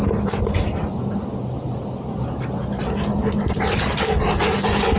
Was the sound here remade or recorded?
recorded